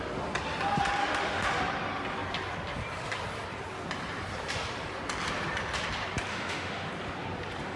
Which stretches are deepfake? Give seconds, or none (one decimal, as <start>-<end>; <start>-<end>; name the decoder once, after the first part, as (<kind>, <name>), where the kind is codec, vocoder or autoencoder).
1.0-1.5 (autoencoder, DAC-VAE); 6.3-6.9